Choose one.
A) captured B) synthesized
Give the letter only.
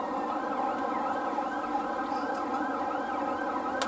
A